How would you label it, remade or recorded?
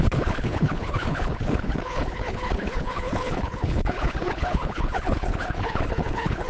remade